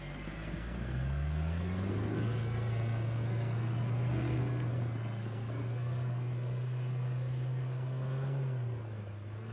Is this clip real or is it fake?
fake